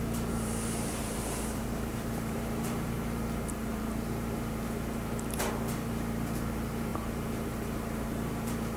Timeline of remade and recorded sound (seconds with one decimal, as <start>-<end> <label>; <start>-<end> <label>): 0.0-8.8 remade